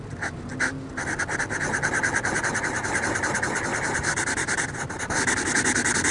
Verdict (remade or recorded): recorded